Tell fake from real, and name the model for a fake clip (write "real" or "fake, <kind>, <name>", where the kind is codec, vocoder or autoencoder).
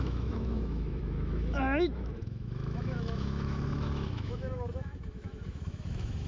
fake, autoencoder, DAC-VAE